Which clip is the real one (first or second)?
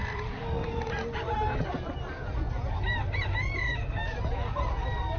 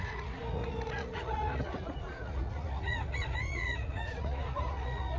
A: first